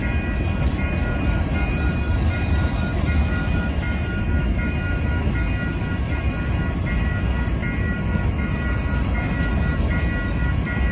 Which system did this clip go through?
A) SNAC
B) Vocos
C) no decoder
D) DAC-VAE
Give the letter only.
C